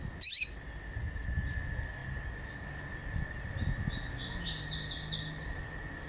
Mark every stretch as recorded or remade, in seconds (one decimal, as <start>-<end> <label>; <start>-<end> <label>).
0.0-6.1 recorded